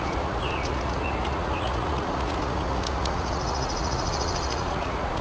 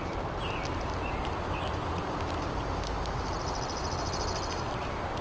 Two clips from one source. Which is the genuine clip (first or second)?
second